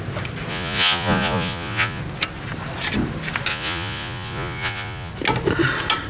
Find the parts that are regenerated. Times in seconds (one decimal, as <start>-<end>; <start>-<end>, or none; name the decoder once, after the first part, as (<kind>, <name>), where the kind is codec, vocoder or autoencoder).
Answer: 0.5-2.0 (vocoder, Vocos); 3.5-5.1